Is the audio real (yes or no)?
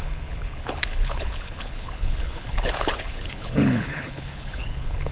no